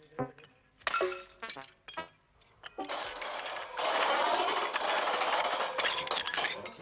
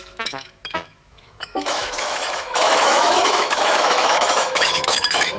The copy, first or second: second